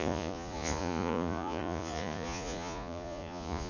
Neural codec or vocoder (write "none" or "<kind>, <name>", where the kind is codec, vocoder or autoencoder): vocoder, Vocos